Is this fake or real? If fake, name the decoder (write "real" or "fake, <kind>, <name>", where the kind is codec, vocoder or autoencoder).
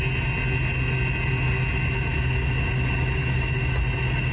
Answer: real